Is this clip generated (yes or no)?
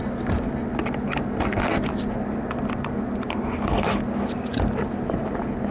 no